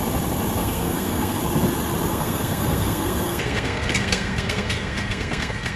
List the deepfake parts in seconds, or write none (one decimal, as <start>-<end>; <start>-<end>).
0.6-1.4; 2.1-5.8